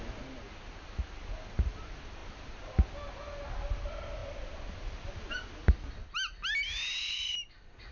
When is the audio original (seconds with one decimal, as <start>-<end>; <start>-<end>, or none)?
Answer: 0.0-7.9